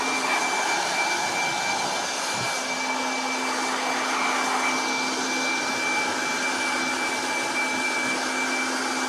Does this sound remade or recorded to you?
recorded